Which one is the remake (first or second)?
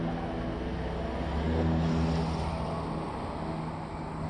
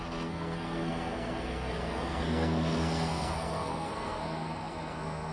second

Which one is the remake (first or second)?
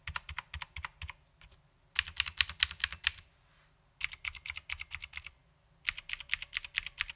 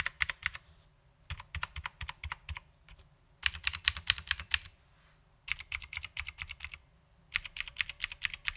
second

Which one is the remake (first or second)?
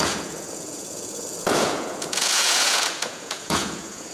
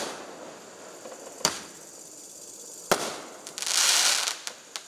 first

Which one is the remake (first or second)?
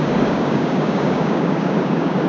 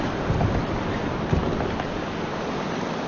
first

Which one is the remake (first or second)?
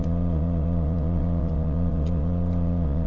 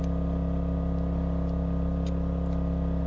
first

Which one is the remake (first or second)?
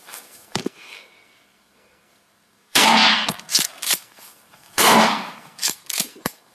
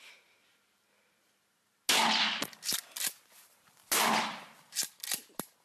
first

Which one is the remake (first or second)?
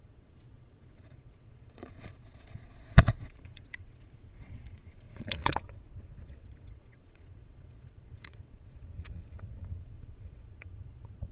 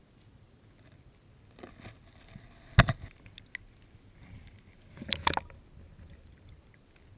first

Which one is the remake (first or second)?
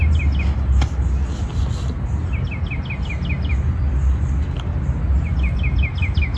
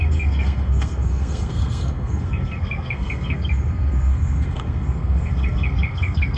second